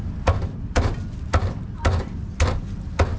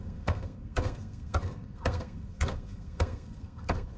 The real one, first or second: first